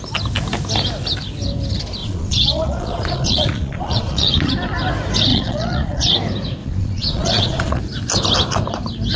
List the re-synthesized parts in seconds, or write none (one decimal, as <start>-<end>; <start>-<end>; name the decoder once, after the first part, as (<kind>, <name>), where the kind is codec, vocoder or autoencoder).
2.0-4.5 (vocoder, Vocos); 5.3-6.1; 6.6-7.8